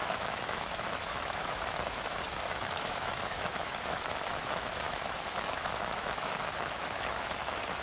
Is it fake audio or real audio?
fake